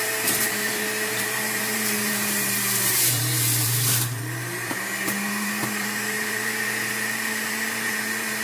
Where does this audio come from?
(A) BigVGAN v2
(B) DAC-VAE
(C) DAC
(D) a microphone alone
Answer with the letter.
A